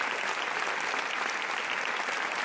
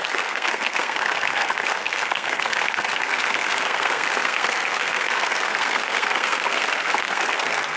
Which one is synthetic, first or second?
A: second